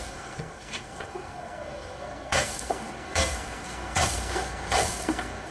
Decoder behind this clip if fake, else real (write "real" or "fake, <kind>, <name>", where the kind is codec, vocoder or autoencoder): fake, codec, SNAC